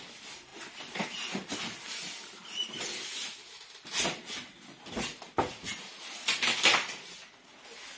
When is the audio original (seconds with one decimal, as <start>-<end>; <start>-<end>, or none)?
0.0-8.0